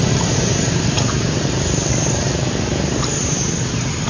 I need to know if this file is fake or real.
fake